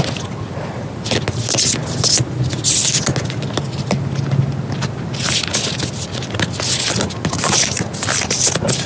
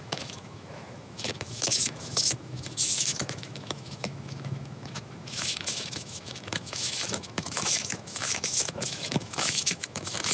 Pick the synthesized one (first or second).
second